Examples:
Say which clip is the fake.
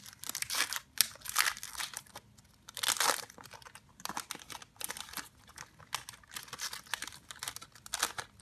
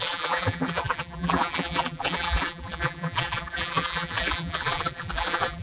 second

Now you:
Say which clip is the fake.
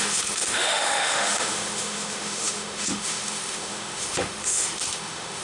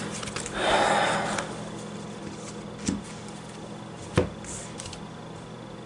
first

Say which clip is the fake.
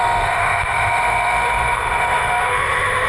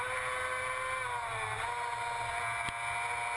first